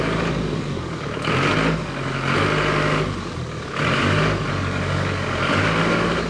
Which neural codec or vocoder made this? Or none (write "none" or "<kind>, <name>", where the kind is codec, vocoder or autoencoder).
codec, DAC